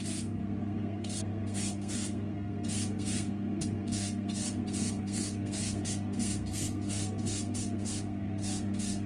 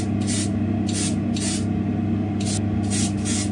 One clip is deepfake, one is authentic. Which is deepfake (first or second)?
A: first